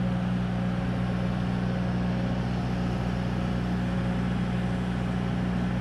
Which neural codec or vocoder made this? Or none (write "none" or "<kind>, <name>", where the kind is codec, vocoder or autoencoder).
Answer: none